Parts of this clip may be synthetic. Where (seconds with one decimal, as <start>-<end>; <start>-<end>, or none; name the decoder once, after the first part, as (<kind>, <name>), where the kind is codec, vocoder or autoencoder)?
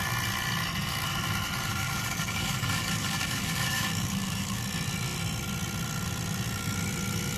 1.7-4.6 (codec, DAC)